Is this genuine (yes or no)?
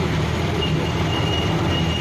yes